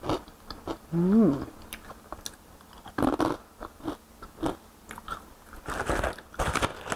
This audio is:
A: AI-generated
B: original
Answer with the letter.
B